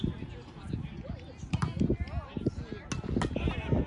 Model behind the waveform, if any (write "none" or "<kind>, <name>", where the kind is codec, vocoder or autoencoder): none